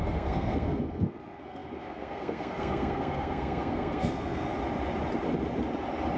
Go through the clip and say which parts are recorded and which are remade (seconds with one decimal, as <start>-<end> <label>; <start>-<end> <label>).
0.0-4.5 remade; 4.5-6.2 recorded